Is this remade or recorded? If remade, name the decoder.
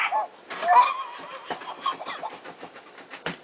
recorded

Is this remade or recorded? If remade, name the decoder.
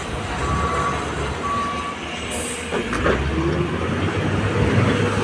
recorded